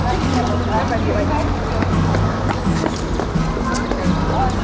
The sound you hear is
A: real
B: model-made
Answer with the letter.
A